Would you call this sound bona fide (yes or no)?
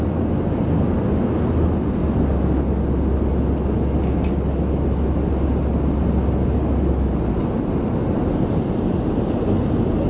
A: yes